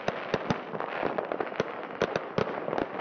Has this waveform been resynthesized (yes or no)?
no